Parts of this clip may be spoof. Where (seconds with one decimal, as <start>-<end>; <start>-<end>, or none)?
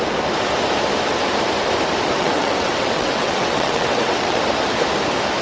2.1-4.4